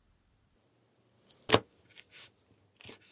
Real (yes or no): yes